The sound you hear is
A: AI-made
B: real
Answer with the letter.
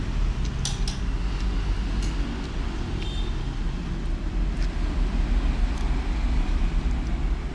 B